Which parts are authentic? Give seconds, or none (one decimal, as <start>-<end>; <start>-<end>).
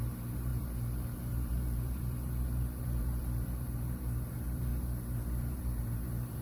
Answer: none